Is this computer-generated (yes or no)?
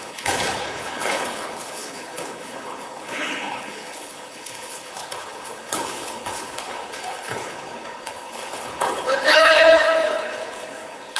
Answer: yes